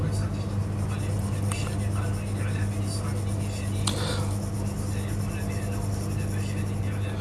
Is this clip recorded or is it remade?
recorded